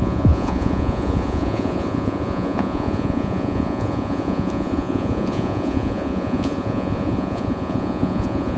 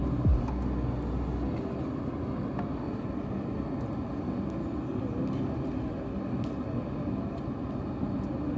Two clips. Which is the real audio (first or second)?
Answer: second